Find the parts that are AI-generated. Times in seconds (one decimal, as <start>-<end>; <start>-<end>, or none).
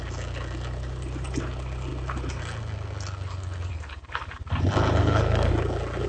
5.0-5.5